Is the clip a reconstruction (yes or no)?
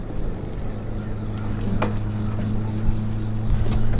no